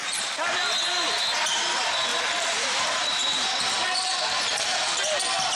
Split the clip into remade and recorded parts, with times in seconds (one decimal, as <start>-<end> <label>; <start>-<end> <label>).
0.0-2.1 recorded; 2.1-3.4 remade; 3.4-3.8 recorded; 3.8-5.1 remade; 5.1-5.5 recorded